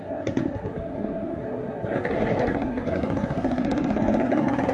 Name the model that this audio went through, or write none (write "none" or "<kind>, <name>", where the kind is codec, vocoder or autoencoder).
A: codec, SNAC